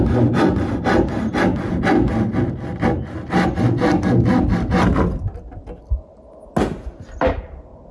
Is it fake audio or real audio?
real